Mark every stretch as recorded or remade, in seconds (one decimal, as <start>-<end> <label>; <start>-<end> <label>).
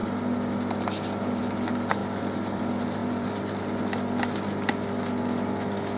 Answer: 0.0-2.0 recorded; 2.0-2.6 remade; 2.6-3.0 recorded; 3.0-3.6 remade; 3.6-6.0 recorded